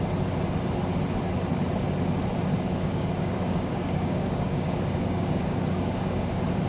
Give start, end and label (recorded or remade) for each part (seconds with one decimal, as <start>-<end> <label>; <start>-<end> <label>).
0.0-2.5 recorded; 2.5-6.2 remade; 6.2-6.7 recorded